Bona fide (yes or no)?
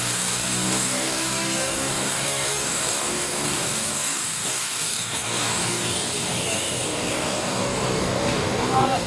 no